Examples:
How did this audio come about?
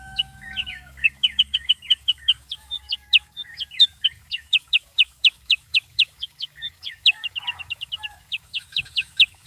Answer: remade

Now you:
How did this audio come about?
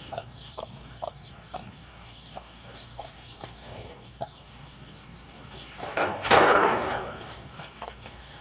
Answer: remade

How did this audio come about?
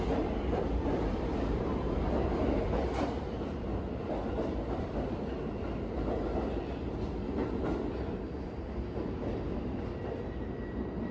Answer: recorded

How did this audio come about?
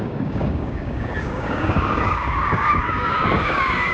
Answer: remade